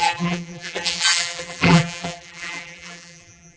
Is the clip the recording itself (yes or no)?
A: no